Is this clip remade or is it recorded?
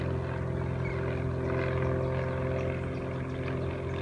recorded